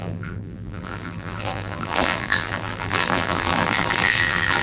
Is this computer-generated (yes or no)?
yes